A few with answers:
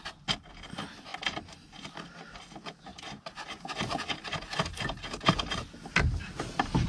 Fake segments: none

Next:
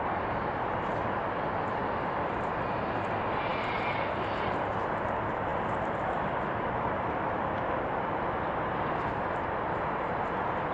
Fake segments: 1.8-2.3 (vocoder, BigVGAN v2); 5.5-10.1

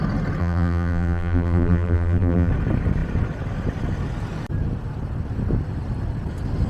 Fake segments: 0.4-2.5 (vocoder, BigVGAN v2)

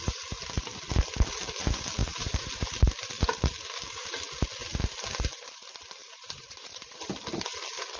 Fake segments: 2.0-2.5 (vocoder, BigVGAN v2); 6.0-7.1

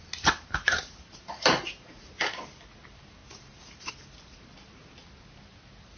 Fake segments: 0.4-2.1 (vocoder, BigVGAN v2); 3.2-3.9

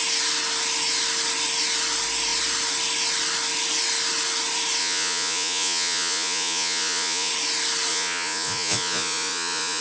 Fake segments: 4.8-7.3 (vocoder, Vocos); 7.9-9.8